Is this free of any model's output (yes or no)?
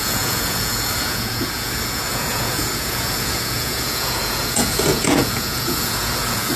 no